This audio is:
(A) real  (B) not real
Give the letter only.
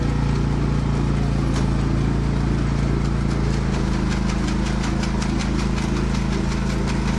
A